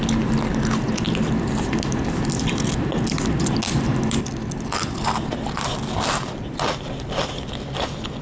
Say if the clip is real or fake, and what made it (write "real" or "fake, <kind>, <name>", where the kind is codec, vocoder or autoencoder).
real